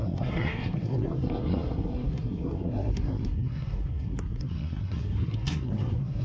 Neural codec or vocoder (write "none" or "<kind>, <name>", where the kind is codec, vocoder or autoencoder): codec, SNAC